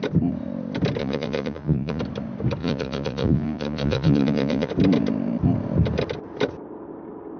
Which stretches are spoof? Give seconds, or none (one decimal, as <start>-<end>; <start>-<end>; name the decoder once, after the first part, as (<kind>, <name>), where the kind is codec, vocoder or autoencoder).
1.0-2.0 (vocoder, Vocos); 2.6-4.7